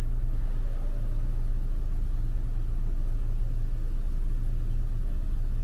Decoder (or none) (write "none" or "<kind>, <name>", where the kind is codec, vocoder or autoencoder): none